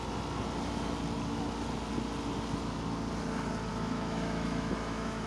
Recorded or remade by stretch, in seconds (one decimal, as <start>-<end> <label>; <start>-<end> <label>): 0.0-3.7 recorded; 3.7-5.3 remade

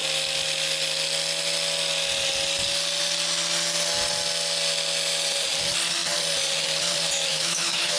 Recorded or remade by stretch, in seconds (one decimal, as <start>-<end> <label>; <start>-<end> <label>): 0.0-7.3 recorded; 7.3-8.0 remade

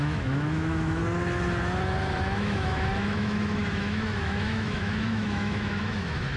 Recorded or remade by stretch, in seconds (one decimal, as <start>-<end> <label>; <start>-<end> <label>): 0.0-1.0 remade; 1.0-2.2 recorded; 2.2-6.4 remade

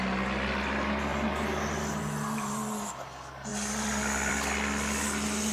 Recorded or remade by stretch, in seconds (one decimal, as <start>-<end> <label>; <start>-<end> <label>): 0.0-5.5 recorded

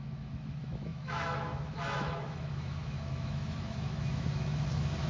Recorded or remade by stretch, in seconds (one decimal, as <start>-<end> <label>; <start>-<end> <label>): 0.0-5.1 remade

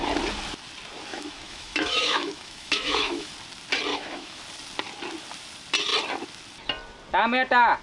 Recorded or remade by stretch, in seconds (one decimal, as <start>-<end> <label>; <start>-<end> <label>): 0.0-1.1 recorded; 1.1-3.3 remade; 3.3-3.9 recorded; 3.9-4.4 remade; 4.4-7.8 recorded